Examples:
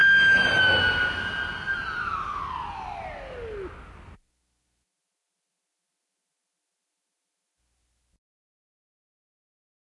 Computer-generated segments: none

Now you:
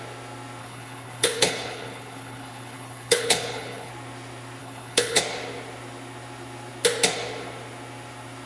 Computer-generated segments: 0.6-3.9 (codec, HILCodec); 4.6-5.2